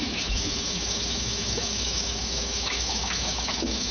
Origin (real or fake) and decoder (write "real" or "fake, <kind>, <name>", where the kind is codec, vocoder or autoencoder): fake, autoencoder, DAC-VAE